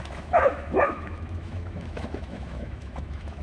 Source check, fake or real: fake